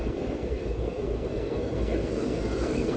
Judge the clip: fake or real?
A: fake